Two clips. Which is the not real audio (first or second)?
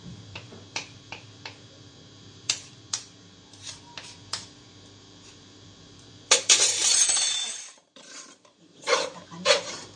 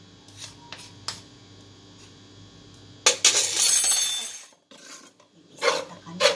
first